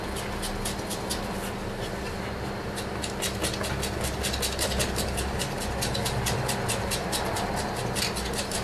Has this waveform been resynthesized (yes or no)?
no